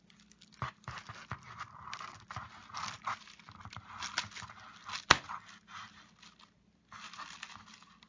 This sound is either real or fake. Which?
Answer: real